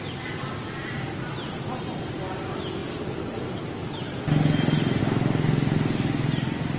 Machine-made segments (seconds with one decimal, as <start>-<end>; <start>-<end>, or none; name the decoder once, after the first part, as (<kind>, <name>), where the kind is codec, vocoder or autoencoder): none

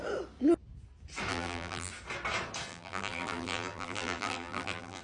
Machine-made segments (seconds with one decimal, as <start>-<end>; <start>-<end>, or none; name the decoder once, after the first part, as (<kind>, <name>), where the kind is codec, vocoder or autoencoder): 1.3-1.9 (vocoder, BigVGAN v2); 2.7-5.0

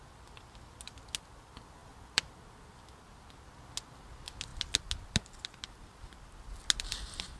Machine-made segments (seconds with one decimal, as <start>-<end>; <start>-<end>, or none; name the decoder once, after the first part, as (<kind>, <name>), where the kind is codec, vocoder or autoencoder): 1.8-2.4 (vocoder, BigVGAN v2)

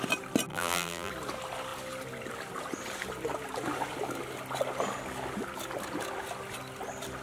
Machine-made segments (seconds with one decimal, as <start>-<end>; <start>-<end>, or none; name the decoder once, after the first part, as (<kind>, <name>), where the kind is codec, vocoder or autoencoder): 0.5-1.1 (vocoder, BigVGAN v2)

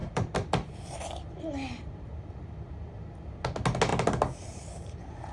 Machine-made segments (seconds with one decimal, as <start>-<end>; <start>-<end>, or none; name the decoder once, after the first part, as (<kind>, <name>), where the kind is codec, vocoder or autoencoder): 0.0-1.4 (vocoder, BigVGAN v2)